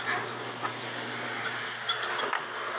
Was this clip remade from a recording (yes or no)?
no